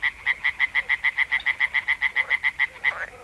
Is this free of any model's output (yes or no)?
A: yes